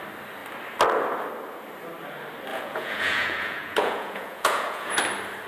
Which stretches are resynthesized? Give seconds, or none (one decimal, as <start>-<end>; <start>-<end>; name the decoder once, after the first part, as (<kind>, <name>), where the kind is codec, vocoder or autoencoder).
2.5-5.0 (vocoder, Vocos)